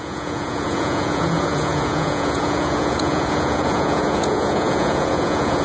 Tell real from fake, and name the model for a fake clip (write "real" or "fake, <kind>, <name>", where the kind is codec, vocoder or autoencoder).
fake, vocoder, Vocos